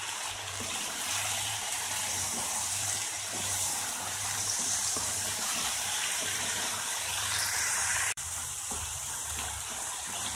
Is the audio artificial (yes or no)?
yes